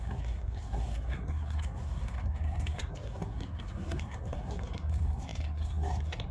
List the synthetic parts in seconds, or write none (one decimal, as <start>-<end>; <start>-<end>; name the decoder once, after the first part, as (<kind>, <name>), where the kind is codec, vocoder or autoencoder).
0.0-6.3 (codec, SNAC)